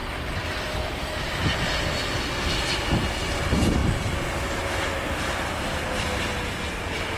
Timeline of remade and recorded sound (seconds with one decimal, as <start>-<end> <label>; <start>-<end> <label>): 0.0-7.2 recorded